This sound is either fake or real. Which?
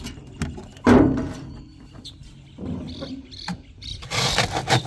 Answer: real